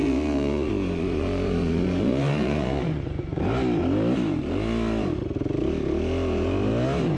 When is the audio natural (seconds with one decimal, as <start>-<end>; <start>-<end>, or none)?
3.4-7.2